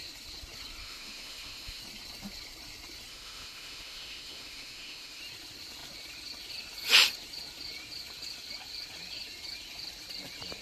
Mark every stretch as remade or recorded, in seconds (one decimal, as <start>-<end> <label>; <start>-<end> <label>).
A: 0.0-0.8 recorded; 0.8-1.8 remade; 1.8-3.1 recorded; 3.1-5.2 remade; 5.2-10.6 recorded